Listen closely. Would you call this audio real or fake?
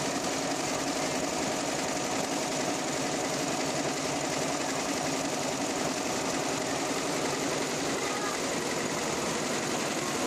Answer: real